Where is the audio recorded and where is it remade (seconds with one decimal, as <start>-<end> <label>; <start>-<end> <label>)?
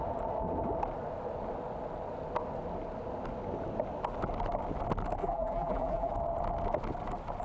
0.0-5.2 recorded; 5.2-6.1 remade; 6.1-7.4 recorded